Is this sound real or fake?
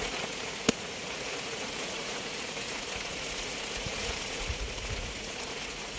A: fake